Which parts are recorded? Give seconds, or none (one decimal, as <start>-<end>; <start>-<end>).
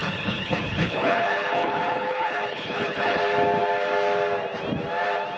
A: 3.2-5.4